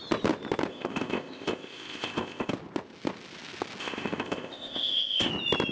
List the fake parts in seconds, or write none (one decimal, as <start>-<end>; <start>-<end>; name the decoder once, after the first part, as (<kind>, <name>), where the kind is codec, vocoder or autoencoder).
0.7-2.5 (codec, ZipCodec); 3.8-5.3

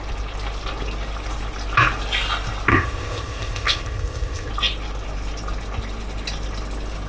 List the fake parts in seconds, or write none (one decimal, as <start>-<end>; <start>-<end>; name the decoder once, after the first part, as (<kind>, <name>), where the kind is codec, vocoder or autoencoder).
2.7-4.5 (codec, ZipCodec)

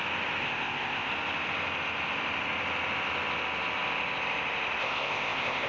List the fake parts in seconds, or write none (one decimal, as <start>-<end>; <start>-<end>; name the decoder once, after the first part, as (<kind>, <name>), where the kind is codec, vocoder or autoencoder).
0.4-1.1 (codec, ZipCodec); 4.8-5.7

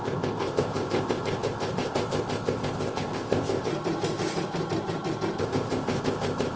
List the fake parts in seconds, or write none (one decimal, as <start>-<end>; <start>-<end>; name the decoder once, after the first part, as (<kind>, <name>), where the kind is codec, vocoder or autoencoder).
0.0-3.7 (codec, ZipCodec); 5.4-6.6

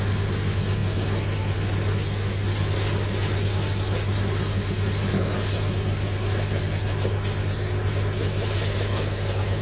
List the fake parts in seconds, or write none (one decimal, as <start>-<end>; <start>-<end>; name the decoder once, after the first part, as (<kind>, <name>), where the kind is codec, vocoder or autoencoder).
none

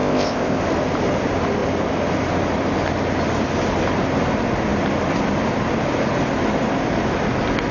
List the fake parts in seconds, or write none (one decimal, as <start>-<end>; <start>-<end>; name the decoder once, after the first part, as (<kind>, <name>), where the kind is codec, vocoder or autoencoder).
0.0-0.6 (codec, ZipCodec)

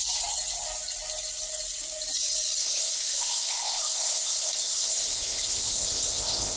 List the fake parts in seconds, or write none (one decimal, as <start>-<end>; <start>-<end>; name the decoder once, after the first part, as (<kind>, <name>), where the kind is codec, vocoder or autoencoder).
2.6-6.6 (codec, ZipCodec)